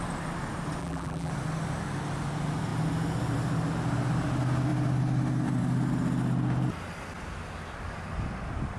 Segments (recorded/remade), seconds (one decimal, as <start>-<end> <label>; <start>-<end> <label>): 0.0-0.8 recorded; 0.8-1.3 remade; 1.3-8.8 recorded